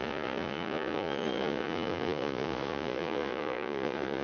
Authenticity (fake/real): fake